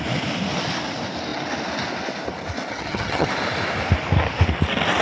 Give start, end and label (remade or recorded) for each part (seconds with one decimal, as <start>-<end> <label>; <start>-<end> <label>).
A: 0.0-2.7 recorded; 2.7-3.3 remade; 3.3-5.0 recorded